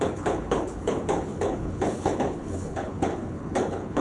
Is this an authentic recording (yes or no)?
no